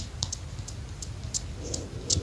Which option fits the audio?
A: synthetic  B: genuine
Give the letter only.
B